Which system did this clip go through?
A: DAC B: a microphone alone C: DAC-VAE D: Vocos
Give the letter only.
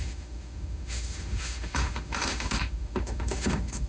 C